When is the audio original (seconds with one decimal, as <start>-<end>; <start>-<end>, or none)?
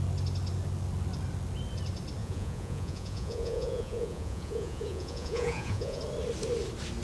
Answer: 0.0-2.2; 6.0-7.0